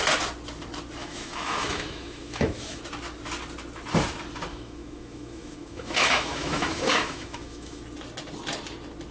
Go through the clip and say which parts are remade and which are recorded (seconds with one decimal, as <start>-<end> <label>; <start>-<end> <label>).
0.0-1.0 recorded; 1.0-2.8 remade; 2.8-4.5 recorded; 4.5-7.8 remade; 7.8-9.1 recorded